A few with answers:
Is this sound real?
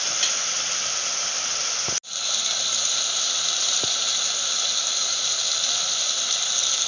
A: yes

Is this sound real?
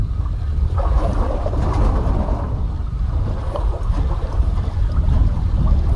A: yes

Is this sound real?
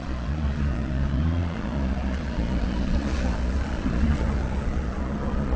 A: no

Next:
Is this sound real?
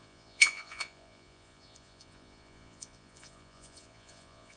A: no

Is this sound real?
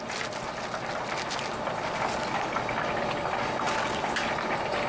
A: yes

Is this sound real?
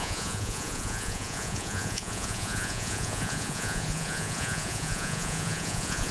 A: no